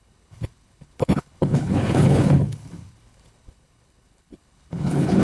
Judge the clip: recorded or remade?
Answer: remade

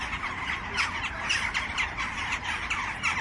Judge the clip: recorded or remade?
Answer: recorded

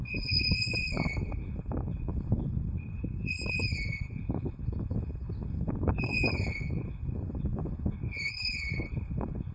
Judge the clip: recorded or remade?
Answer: remade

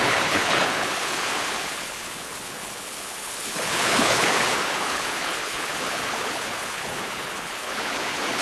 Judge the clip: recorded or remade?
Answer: remade